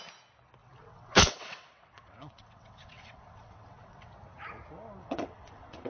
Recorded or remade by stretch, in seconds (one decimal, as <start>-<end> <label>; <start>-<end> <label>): 0.0-0.6 recorded; 0.6-4.1 remade; 4.1-5.0 recorded; 5.0-5.9 remade